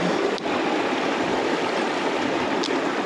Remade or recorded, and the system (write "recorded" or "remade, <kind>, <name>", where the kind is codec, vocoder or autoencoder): recorded